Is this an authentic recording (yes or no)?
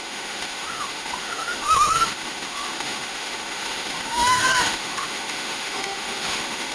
no